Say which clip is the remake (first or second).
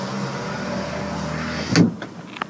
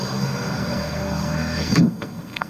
second